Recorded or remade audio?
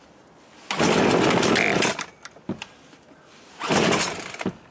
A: recorded